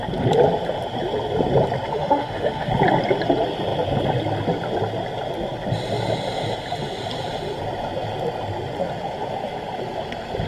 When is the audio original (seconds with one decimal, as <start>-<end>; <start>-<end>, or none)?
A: 0.0-1.9; 2.7-10.5